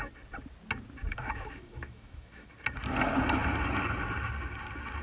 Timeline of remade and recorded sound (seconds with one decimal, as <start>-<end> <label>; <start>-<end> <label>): 0.0-1.1 recorded; 1.1-2.5 remade; 2.5-5.0 recorded